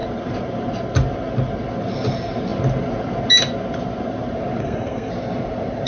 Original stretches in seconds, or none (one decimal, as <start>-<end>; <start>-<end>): 0.0-4.6; 5.1-5.9